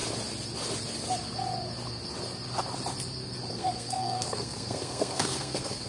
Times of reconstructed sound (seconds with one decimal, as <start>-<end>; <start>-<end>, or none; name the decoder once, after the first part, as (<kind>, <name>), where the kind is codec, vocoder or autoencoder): 3.5-5.9 (codec, SNAC)